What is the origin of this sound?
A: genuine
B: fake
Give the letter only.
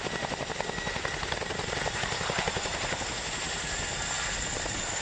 A